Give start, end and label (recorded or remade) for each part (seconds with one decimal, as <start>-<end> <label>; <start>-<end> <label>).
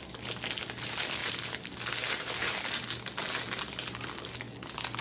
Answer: 0.0-5.0 recorded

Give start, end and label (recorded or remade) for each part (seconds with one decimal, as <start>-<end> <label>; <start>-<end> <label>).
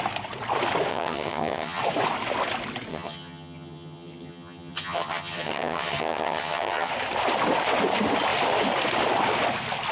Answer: 0.0-0.9 recorded; 0.9-1.8 remade; 1.8-2.9 recorded; 2.9-6.9 remade; 6.9-9.9 recorded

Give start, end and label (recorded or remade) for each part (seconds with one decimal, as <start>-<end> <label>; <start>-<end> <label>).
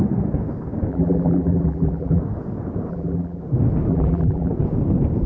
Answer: 0.0-0.9 recorded; 0.9-2.2 remade; 2.2-2.9 recorded; 2.9-3.4 remade; 3.4-3.9 recorded; 3.9-4.5 remade; 4.5-5.3 recorded